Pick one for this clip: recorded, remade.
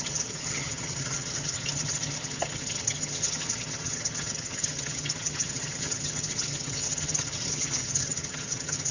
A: remade